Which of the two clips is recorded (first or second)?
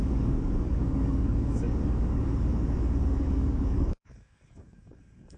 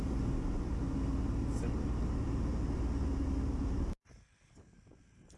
second